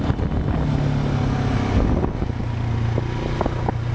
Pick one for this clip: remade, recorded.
recorded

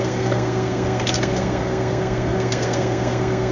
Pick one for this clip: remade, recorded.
remade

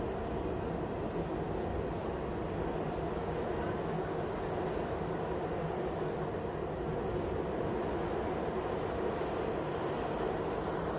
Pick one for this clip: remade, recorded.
recorded